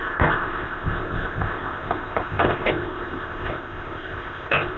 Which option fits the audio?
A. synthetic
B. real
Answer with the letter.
A